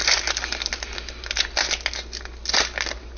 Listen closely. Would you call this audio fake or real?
real